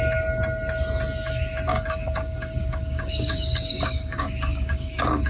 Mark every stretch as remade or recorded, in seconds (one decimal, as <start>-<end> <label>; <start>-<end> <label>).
0.0-1.7 recorded; 1.7-5.3 remade